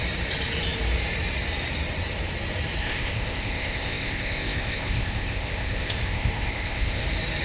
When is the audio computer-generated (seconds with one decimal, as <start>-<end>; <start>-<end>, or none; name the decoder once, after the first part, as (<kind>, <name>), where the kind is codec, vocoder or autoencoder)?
2.8-7.0 (codec, ZipCodec)